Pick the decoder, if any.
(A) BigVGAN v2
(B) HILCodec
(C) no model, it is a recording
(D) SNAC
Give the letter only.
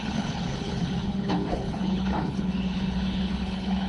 B